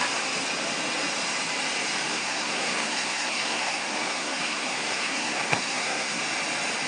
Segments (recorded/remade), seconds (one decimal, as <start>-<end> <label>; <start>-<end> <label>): 0.0-2.1 recorded; 2.1-6.2 remade; 6.2-6.9 recorded